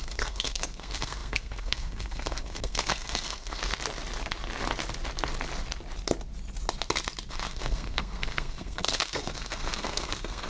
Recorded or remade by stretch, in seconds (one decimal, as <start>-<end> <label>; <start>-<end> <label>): 0.0-3.7 remade; 3.7-7.3 recorded; 7.3-10.5 remade